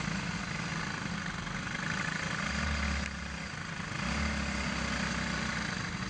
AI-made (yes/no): no